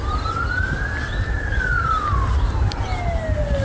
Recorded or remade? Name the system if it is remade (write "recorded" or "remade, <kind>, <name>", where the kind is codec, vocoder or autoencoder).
recorded